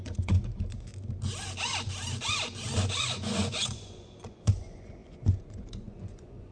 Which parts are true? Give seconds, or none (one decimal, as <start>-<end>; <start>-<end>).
0.9-3.0